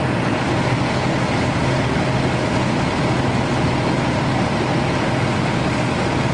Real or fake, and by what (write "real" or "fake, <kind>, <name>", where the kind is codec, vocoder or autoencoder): real